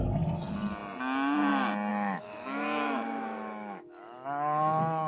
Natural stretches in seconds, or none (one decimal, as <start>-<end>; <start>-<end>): 0.0-1.9